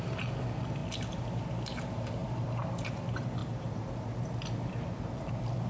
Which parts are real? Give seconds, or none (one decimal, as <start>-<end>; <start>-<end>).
0.0-5.7